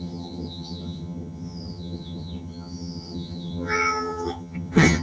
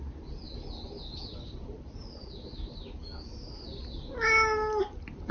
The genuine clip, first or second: second